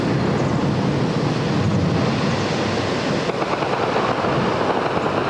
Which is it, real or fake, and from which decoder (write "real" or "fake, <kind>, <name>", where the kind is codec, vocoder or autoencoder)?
real